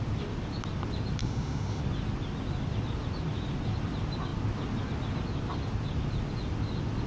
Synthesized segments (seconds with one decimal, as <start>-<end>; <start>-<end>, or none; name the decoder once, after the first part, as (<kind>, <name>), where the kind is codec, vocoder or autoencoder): 1.2-1.8 (autoencoder, DAC-VAE)